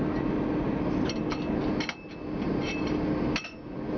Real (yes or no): yes